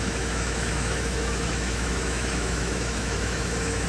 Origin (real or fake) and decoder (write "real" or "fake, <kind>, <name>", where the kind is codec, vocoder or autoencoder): fake, autoencoder, DAC-VAE